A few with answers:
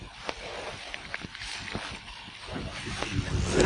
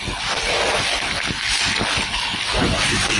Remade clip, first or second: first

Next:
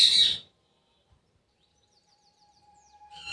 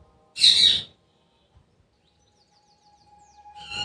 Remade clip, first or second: first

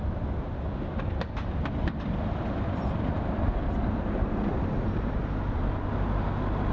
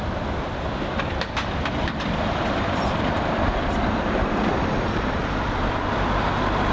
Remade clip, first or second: second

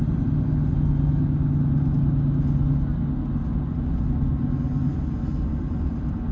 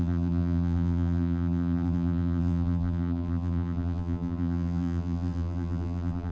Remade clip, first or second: second